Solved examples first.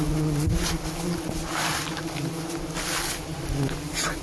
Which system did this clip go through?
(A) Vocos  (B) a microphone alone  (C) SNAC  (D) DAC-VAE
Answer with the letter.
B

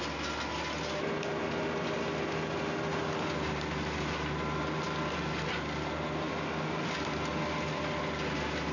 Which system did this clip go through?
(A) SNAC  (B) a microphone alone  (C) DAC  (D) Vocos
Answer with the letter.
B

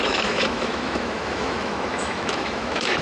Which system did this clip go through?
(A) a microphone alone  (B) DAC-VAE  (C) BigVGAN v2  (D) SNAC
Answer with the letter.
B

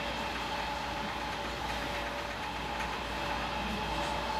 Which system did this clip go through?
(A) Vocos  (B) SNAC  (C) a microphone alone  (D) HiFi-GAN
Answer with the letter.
C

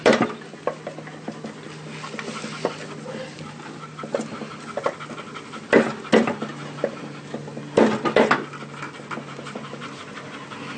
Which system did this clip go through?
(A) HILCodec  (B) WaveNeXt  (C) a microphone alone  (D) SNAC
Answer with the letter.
C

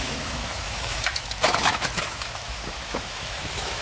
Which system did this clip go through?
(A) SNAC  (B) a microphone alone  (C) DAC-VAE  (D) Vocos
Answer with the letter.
C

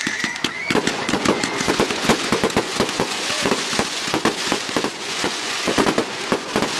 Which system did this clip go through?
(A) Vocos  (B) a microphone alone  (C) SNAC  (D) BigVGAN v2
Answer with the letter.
A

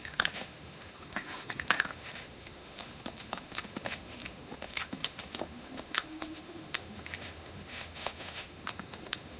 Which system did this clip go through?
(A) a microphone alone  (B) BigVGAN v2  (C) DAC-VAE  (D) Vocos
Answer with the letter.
C